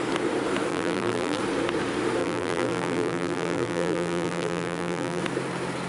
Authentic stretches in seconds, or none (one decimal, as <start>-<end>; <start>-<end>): 0.0-0.7; 1.4-2.2; 5.2-5.9